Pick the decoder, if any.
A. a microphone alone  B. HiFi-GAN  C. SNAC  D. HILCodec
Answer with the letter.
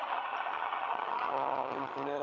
B